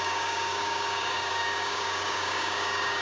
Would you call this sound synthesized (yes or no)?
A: yes